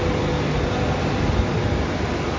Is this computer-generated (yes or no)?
no